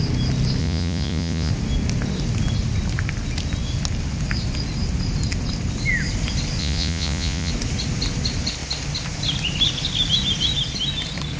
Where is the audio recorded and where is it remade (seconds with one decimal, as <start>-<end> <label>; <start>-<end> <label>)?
0.0-0.6 recorded; 0.6-1.5 remade; 1.5-6.6 recorded; 6.6-7.5 remade; 7.5-11.4 recorded